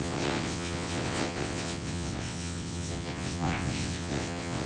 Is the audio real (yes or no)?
no